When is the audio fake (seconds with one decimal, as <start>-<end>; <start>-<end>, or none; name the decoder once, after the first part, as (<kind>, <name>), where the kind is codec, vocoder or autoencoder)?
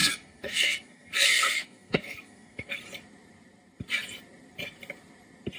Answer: 0.0-2.8 (codec, SNAC)